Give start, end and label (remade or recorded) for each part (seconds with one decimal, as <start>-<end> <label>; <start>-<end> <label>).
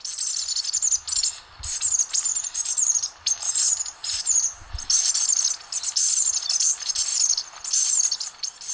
0.0-2.3 recorded; 2.3-4.7 remade; 4.7-8.7 recorded